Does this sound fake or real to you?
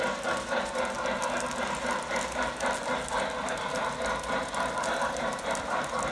real